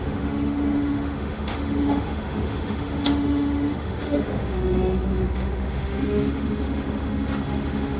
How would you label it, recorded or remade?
remade